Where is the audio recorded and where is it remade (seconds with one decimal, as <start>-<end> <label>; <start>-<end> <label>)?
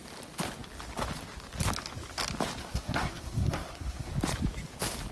0.0-2.6 recorded; 2.6-4.1 remade; 4.1-5.1 recorded